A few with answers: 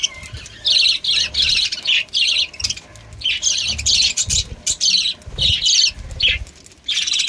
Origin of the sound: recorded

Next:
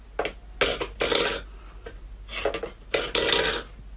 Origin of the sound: recorded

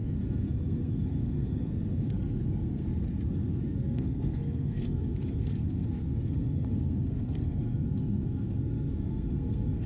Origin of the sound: remade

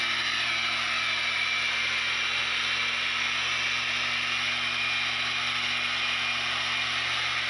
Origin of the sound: recorded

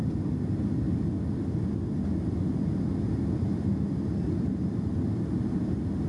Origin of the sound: recorded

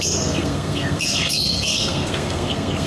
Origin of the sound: remade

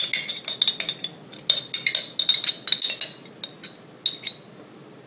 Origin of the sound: recorded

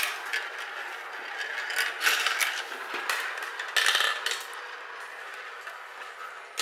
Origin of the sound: recorded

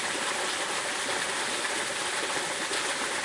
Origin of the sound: recorded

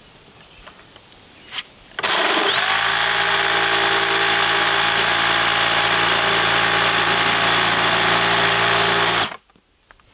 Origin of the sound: recorded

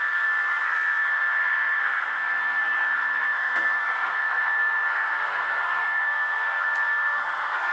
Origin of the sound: remade